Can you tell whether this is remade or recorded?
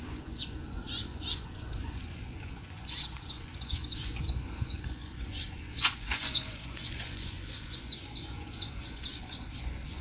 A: remade